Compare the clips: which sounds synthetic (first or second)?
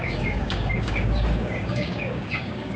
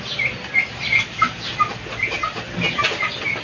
first